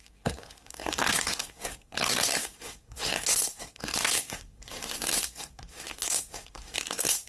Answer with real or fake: fake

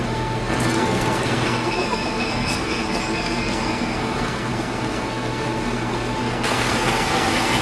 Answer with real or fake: fake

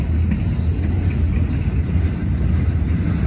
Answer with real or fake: real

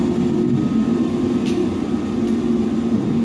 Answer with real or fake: real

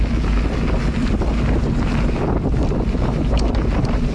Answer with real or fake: real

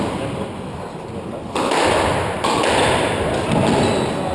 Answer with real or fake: real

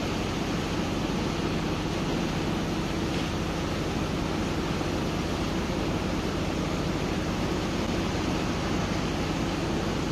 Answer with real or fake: real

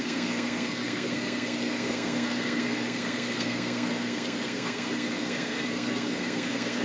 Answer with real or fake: fake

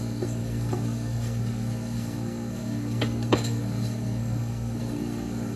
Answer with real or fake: fake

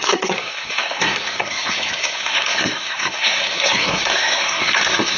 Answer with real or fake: fake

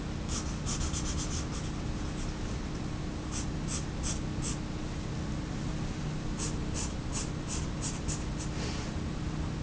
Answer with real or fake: real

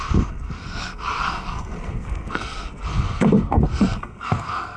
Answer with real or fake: fake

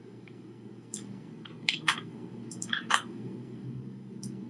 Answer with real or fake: fake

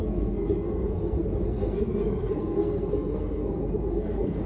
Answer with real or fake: fake